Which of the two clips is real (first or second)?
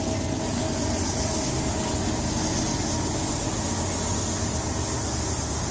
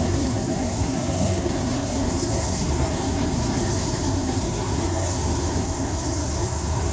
first